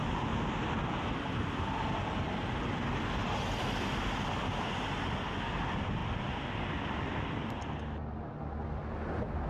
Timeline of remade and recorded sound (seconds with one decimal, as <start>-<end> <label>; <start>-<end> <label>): 0.0-9.5 recorded